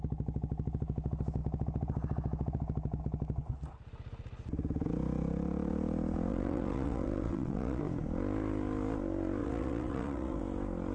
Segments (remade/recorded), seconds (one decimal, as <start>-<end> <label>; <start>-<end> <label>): 0.0-6.3 recorded; 6.3-7.8 remade; 7.8-9.4 recorded; 9.4-10.4 remade; 10.4-10.9 recorded